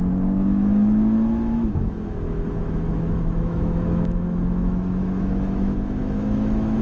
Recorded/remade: remade